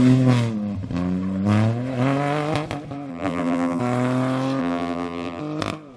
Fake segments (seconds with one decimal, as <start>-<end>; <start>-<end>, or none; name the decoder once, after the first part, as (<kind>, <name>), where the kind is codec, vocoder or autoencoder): 3.1-3.8 (vocoder, BigVGAN v2); 4.6-5.4

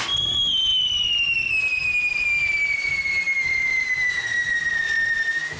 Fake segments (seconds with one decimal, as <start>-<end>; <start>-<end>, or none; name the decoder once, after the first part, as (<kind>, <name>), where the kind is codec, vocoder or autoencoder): none